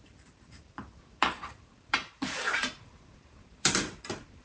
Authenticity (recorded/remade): remade